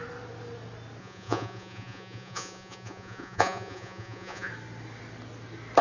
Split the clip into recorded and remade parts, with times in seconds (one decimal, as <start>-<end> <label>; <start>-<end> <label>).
0.0-1.0 recorded; 1.0-4.5 remade; 4.5-5.8 recorded